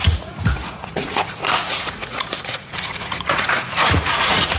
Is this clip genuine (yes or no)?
no